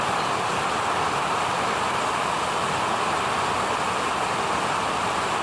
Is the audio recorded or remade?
recorded